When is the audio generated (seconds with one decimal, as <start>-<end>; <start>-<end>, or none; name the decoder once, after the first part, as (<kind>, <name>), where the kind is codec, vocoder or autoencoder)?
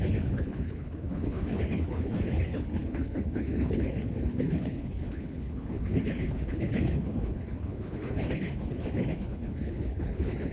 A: 0.0-10.5 (codec, HILCodec)